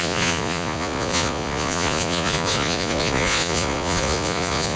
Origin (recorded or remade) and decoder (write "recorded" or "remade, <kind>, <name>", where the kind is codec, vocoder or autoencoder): remade, vocoder, Vocos